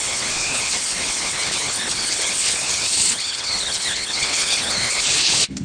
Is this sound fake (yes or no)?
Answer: yes